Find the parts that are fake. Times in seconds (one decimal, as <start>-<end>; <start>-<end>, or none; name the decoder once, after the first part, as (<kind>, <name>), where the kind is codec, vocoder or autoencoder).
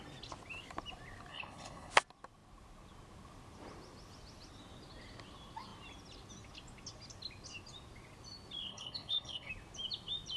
1.3-1.9 (codec, HILCodec); 8.7-9.5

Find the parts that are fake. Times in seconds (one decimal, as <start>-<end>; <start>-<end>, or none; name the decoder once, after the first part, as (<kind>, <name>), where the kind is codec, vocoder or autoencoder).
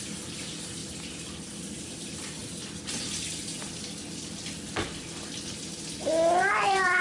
0.0-0.8 (vocoder, BigVGAN v2); 1.7-2.4; 6.4-7.0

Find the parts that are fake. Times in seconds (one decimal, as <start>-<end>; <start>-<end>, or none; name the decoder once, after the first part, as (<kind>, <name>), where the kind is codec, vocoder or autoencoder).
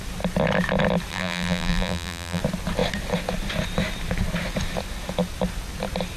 1.1-2.4 (vocoder, BigVGAN v2)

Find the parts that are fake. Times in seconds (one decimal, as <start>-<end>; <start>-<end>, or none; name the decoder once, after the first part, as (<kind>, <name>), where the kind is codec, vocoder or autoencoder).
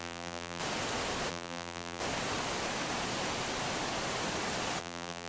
0.0-0.6 (vocoder, BigVGAN v2); 1.3-2.0; 4.8-5.3